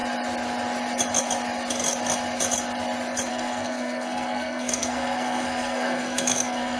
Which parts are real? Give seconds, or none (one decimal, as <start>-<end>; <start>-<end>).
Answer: 0.0-3.3